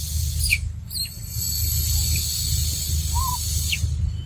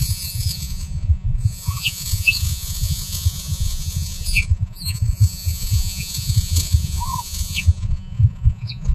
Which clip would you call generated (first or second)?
second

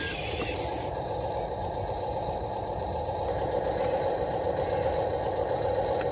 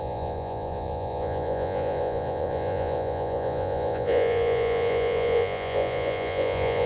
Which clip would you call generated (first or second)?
second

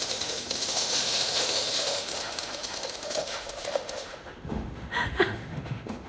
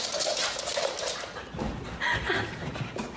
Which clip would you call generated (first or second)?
first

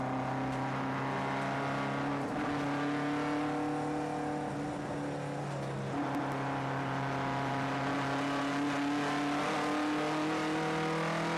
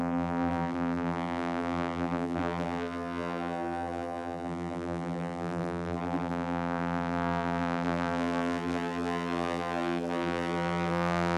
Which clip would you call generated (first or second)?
second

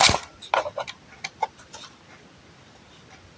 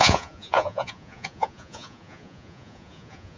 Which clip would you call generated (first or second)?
second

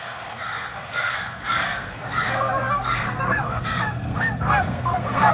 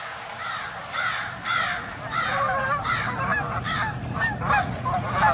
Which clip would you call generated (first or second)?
first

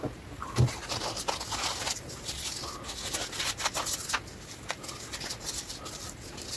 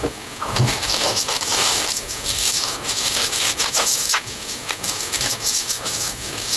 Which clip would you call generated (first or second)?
second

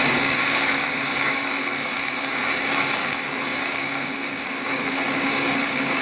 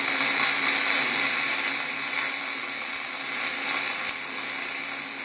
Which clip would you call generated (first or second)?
first